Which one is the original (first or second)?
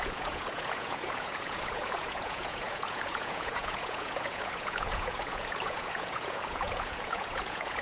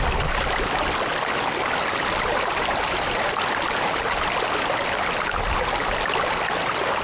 second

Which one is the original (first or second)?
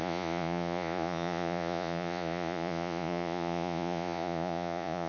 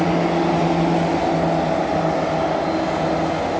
second